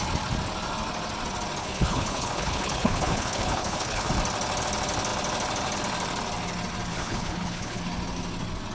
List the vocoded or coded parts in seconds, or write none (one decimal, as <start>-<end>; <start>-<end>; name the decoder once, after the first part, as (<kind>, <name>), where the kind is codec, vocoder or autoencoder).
1.6-4.1 (codec, HILCodec); 6.9-7.8